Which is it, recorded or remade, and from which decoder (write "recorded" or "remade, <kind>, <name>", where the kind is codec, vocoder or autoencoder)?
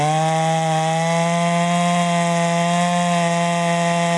recorded